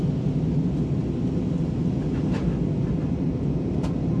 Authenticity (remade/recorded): recorded